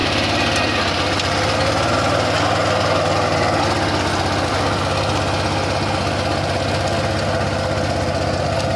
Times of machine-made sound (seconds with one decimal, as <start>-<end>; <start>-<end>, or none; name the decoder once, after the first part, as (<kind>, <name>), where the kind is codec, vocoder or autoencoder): none